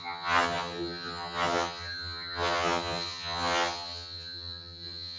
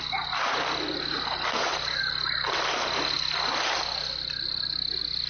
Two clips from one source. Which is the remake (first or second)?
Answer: first